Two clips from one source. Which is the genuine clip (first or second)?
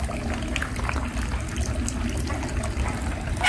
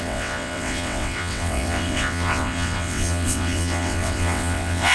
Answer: first